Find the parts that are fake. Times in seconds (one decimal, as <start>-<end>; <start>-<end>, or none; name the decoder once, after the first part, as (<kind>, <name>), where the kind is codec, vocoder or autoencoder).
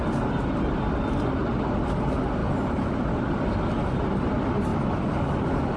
2.4-3.3 (vocoder, BigVGAN v2)